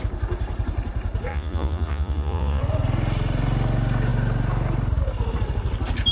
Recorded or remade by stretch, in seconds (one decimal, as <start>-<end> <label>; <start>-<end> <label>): 0.0-1.3 recorded; 1.3-2.6 remade; 2.6-6.1 recorded